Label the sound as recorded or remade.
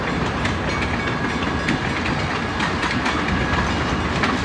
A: recorded